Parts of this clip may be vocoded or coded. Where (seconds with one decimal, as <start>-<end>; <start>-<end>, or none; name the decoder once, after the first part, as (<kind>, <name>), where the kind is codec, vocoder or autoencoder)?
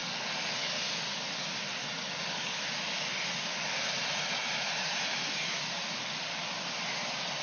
0.0-0.8 (codec, DAC); 1.8-2.6